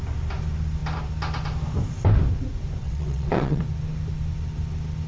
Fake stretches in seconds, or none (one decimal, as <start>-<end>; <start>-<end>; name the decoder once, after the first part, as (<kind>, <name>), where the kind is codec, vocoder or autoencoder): 2.8-3.6 (vocoder, WaveNeXt)